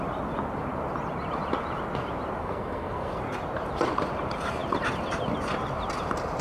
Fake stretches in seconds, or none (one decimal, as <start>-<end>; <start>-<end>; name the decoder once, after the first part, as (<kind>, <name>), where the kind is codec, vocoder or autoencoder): 2.4-3.2 (codec, SNAC)